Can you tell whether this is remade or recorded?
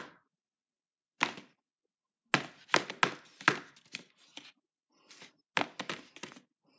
recorded